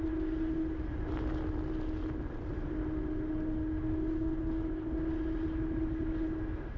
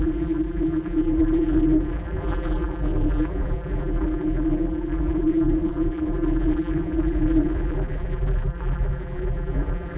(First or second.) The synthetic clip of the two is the second